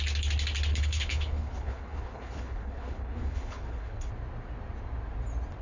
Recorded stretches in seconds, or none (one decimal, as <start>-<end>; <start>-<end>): 0.0-0.7; 4.1-5.6